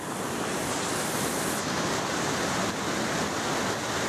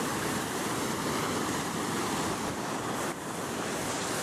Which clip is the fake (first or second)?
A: second